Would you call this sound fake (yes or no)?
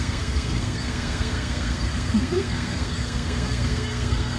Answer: yes